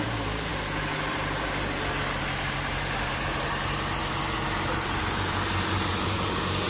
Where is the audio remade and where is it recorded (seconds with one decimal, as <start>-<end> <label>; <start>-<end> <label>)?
0.0-6.7 remade